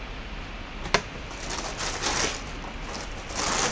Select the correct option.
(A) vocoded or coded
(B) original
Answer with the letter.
B